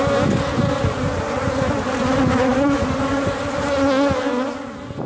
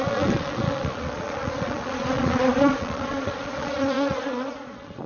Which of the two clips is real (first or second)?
first